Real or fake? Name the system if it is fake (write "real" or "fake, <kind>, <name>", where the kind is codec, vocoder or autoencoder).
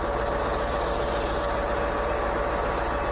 real